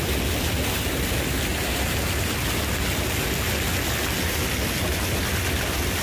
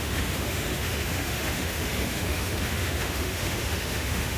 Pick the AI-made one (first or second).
second